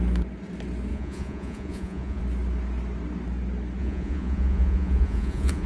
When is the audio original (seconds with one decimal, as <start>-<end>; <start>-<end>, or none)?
0.0-0.9; 2.2-3.8